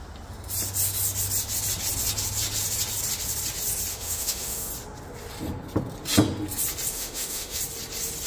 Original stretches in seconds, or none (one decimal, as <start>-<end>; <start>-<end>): 0.0-3.9; 4.7-6.9; 7.6-8.3